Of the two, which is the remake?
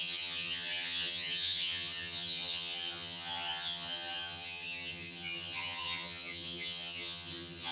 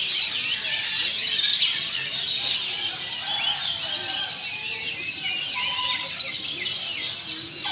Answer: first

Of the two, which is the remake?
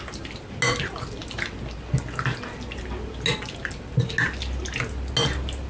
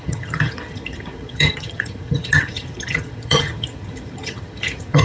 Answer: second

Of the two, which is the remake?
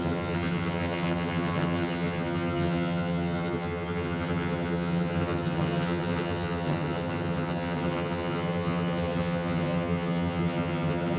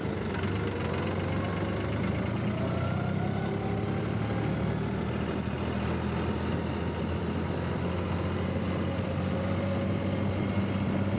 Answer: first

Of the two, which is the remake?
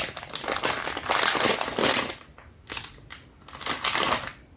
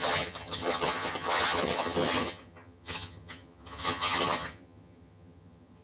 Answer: second